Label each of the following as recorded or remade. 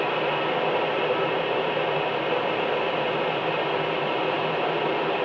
recorded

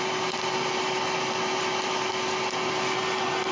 recorded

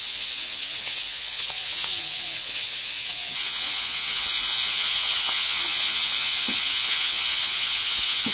remade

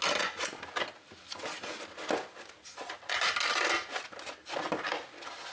recorded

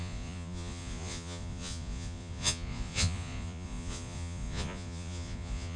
remade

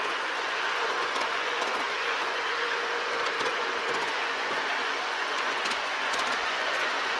remade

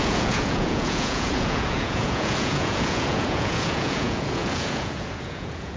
remade